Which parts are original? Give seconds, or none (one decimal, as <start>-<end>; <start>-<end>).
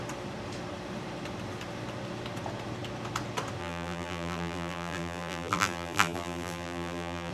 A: 0.0-3.6